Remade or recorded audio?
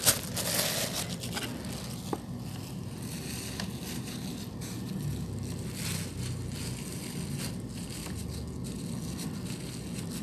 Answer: recorded